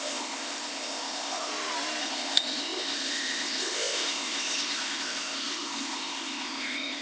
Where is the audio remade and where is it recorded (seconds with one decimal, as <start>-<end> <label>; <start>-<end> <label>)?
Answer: 0.0-1.5 remade; 1.5-2.0 recorded; 2.0-7.0 remade